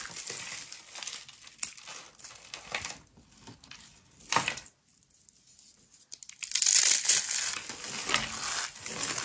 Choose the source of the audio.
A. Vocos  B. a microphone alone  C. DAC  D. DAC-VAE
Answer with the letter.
B